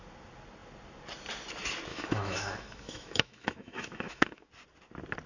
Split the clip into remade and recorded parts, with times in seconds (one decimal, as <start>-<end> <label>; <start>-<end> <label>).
0.0-1.9 recorded; 1.9-4.5 remade; 4.5-5.3 recorded